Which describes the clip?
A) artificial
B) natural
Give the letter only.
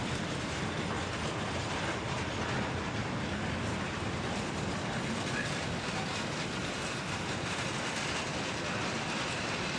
B